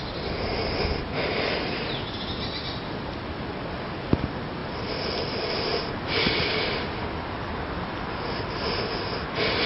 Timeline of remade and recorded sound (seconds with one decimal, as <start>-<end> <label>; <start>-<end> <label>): 0.0-4.6 recorded; 4.6-5.5 remade; 5.5-9.7 recorded